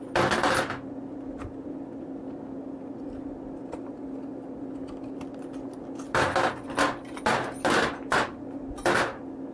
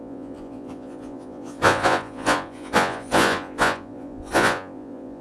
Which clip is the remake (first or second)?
second